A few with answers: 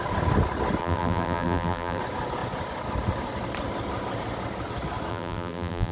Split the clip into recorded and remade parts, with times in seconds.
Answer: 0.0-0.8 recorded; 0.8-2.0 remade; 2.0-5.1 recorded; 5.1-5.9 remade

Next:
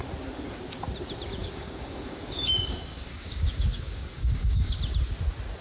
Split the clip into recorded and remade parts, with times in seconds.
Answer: 0.0-1.4 recorded; 1.4-4.8 remade; 4.8-5.6 recorded

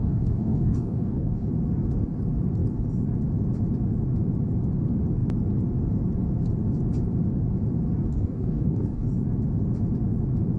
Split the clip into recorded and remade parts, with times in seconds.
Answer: 0.0-1.5 remade; 1.5-8.1 recorded; 8.1-9.1 remade; 9.1-10.6 recorded

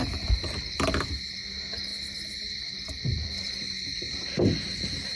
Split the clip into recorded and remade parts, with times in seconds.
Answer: 0.0-5.2 recorded

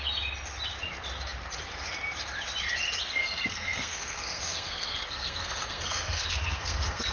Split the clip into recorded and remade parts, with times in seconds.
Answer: 0.0-3.2 recorded; 3.2-7.1 remade

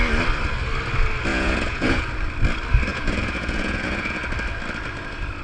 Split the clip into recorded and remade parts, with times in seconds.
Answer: 0.0-1.3 recorded; 1.3-2.0 remade; 2.0-2.9 recorded; 2.9-4.2 remade; 4.2-5.4 recorded

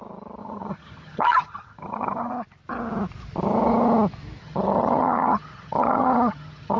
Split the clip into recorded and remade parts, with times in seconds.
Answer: 0.0-0.4 recorded; 0.4-2.3 remade; 2.3-4.4 recorded; 4.4-6.8 remade